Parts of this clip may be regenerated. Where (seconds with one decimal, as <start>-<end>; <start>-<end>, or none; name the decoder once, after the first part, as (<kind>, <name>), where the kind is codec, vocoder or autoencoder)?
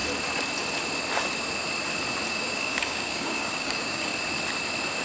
2.3-4.1 (codec, DAC)